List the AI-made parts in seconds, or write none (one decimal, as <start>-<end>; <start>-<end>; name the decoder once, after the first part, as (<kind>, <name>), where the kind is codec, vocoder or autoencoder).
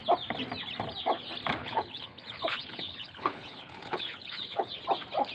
1.6-4.8 (codec, HILCodec)